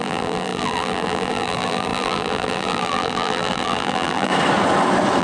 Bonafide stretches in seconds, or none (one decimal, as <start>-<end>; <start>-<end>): 4.3-5.2